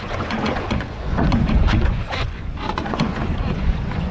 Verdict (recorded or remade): remade